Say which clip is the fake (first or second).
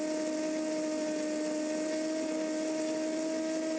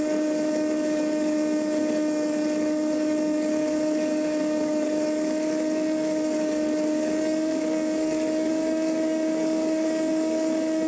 second